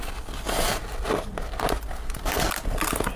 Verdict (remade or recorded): recorded